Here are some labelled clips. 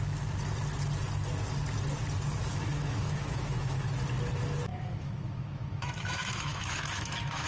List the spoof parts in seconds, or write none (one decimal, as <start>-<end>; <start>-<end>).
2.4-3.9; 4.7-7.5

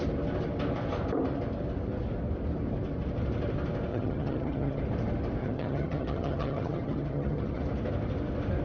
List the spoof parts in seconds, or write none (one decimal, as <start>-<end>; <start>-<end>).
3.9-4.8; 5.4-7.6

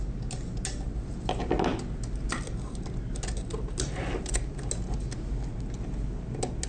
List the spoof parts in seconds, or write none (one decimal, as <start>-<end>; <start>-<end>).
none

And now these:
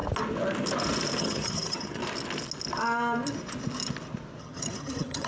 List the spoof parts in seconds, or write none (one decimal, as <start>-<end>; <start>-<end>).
1.2-2.0; 4.4-5.3

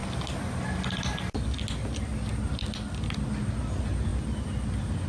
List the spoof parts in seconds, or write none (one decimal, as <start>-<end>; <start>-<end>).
none

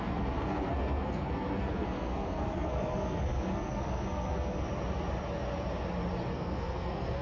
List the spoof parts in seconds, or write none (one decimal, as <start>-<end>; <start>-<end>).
0.0-4.6; 6.3-7.2

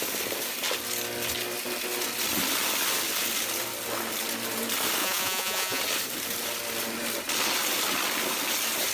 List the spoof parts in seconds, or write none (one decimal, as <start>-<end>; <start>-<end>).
5.0-5.8

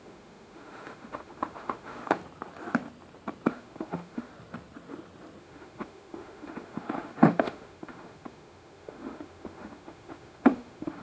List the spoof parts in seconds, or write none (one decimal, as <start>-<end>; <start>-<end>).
0.0-2.2; 3.5-4.3; 5.4-11.0